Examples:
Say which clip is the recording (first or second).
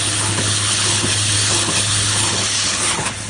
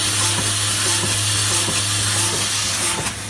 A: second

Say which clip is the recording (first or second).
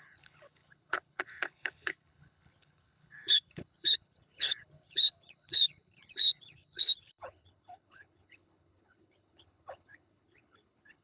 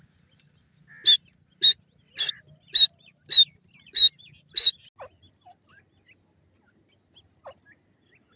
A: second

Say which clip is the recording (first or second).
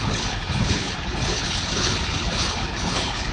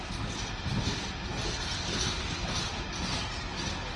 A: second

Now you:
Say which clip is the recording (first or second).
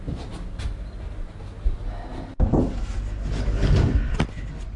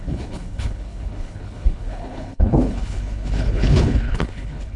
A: first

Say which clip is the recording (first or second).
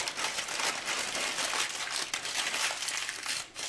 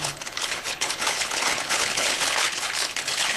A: first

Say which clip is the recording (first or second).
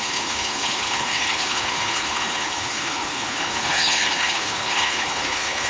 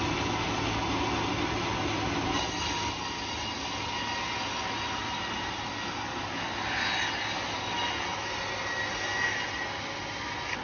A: second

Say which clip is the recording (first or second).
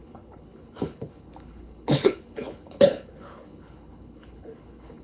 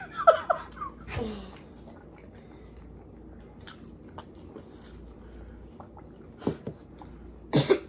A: second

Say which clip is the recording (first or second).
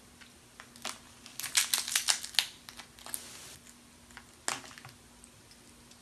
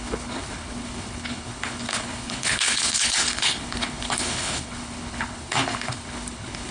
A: first